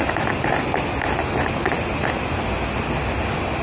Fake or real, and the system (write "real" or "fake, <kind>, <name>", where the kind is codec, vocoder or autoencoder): real